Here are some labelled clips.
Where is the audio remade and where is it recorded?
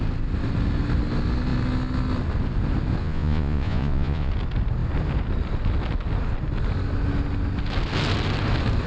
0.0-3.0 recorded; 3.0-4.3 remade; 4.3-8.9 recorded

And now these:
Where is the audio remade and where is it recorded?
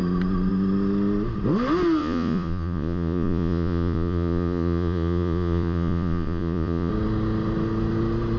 0.0-2.0 recorded; 2.0-6.9 remade; 6.9-8.4 recorded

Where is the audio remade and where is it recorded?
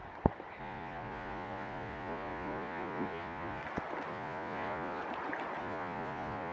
0.0-0.6 recorded; 0.6-3.6 remade; 3.6-4.1 recorded; 4.1-5.0 remade; 5.0-5.6 recorded; 5.6-6.5 remade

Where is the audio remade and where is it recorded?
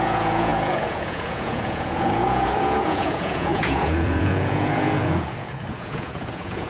0.0-6.7 remade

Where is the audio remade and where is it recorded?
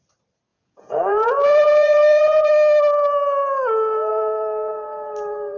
0.0-0.5 recorded; 0.5-2.5 remade; 2.5-5.6 recorded